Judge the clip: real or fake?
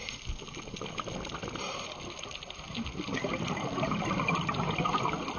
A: real